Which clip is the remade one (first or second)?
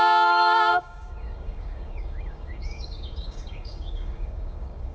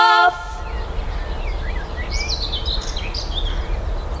first